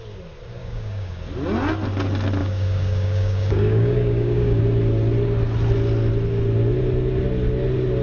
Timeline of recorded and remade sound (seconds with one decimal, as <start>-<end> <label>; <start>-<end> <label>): 0.0-0.6 recorded; 0.6-1.1 remade; 1.1-2.4 recorded; 2.4-4.6 remade; 4.6-8.0 recorded